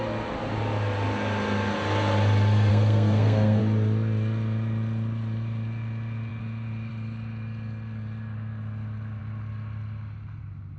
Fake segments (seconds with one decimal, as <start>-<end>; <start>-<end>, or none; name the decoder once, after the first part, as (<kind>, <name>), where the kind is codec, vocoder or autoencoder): 2.7-3.6 (codec, SNAC)